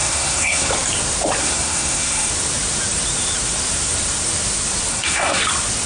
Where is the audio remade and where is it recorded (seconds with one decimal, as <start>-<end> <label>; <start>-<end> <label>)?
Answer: 0.0-0.7 remade; 0.7-1.4 recorded; 1.4-2.3 remade; 2.3-4.9 recorded; 4.9-5.4 remade; 5.4-5.9 recorded